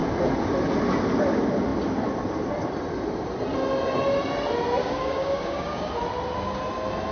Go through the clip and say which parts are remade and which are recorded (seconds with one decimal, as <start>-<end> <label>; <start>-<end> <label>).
0.0-4.8 recorded; 4.8-5.9 remade; 5.9-7.1 recorded